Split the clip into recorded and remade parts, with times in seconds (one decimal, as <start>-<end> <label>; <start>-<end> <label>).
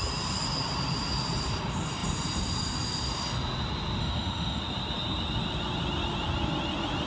0.0-4.0 recorded; 4.0-4.6 remade; 4.6-7.1 recorded